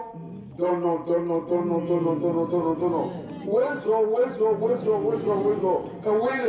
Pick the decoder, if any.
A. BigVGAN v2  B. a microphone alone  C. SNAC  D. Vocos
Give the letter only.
B